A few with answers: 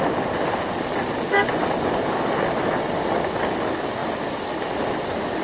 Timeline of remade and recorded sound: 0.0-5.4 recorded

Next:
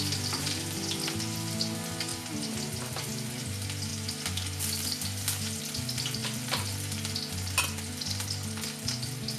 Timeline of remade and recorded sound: 0.0-2.1 recorded; 2.1-3.0 remade; 3.0-3.9 recorded; 3.9-5.6 remade; 5.6-6.2 recorded; 6.2-7.6 remade; 7.6-9.4 recorded

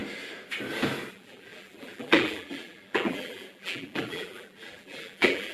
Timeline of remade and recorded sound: 0.0-1.1 recorded; 1.1-5.5 remade

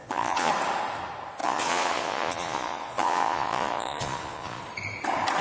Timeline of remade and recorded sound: 0.0-0.5 remade; 0.5-1.4 recorded; 1.4-4.6 remade; 4.6-5.4 recorded